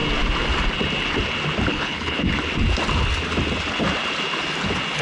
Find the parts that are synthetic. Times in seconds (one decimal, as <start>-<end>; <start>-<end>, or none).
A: 1.7-2.2